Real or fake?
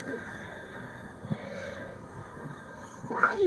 fake